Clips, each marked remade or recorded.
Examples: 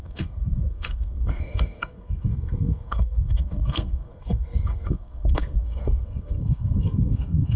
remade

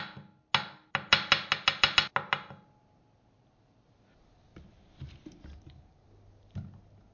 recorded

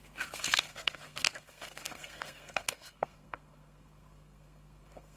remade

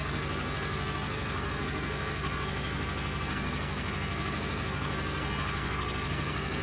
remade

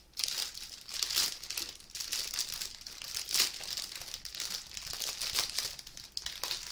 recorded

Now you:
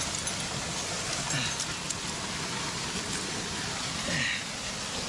recorded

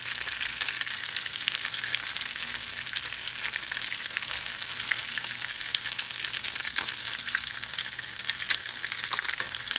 remade